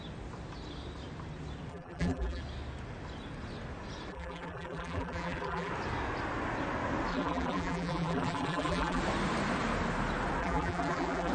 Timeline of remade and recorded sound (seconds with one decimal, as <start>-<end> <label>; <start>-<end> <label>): 0.0-1.7 recorded; 1.7-2.4 remade; 2.4-4.1 recorded; 4.1-5.7 remade; 5.7-7.1 recorded; 7.1-9.0 remade; 9.0-10.4 recorded; 10.4-11.3 remade

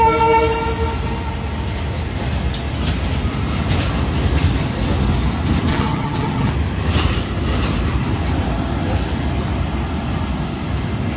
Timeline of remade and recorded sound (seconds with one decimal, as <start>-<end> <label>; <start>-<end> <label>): 0.0-5.7 recorded; 5.7-6.5 remade; 6.5-11.2 recorded

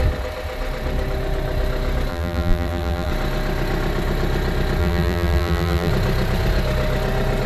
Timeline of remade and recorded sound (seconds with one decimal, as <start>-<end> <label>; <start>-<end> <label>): 0.0-2.1 recorded; 2.1-3.1 remade; 3.1-4.8 recorded; 4.8-5.9 remade; 5.9-7.5 recorded

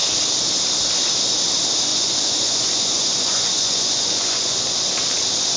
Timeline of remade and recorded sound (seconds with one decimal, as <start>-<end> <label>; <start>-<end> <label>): 0.0-1.9 recorded; 1.9-4.6 remade; 4.6-5.6 recorded

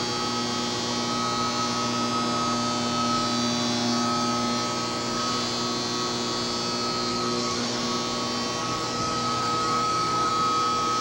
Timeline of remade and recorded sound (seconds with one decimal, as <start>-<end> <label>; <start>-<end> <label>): 0.0-7.1 recorded; 7.1-7.8 remade; 7.8-8.6 recorded; 8.6-10.3 remade; 10.3-11.0 recorded

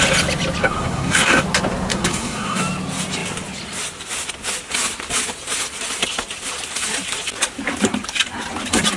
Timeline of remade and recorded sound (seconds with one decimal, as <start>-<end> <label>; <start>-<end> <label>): 0.0-0.6 recorded; 0.6-1.4 remade; 1.4-1.9 recorded; 1.9-2.6 remade; 2.6-9.0 recorded

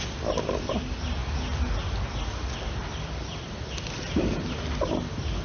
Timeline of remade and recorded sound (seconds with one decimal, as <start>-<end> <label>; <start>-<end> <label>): 0.0-5.4 recorded